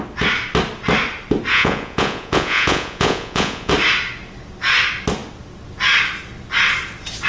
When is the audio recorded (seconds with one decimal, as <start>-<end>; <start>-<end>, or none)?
0.0-1.5; 3.7-7.3